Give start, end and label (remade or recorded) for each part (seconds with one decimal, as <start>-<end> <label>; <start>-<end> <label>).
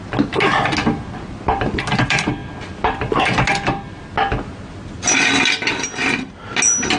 0.0-7.0 recorded